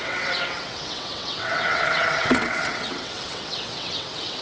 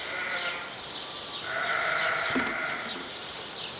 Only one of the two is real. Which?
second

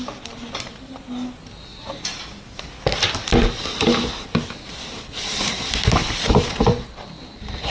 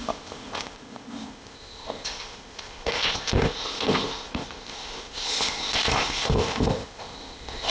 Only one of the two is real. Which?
first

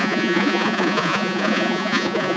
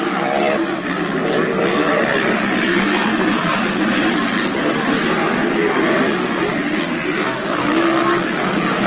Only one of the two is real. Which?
second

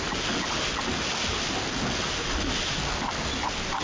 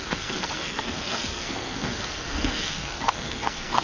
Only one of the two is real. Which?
first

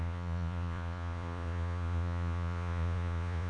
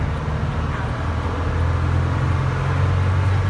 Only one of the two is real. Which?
second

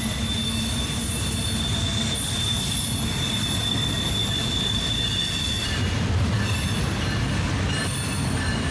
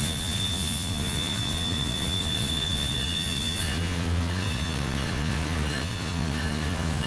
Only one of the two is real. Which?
first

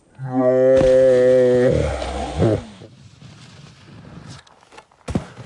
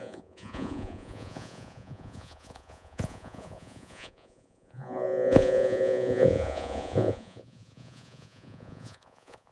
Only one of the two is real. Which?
first